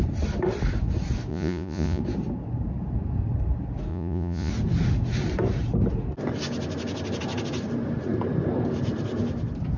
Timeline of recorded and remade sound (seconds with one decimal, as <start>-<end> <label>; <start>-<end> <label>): 0.0-1.3 recorded; 1.3-2.0 remade; 2.0-3.9 recorded; 3.9-4.5 remade; 4.5-9.8 recorded